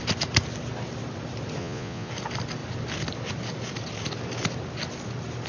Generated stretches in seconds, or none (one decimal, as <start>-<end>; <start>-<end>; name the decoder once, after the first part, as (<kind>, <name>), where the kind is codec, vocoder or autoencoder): 1.6-2.1 (vocoder, Vocos)